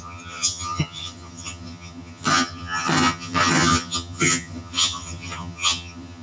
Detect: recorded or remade remade